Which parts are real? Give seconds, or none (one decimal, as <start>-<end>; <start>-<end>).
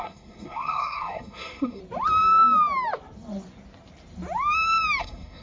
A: 1.8-5.0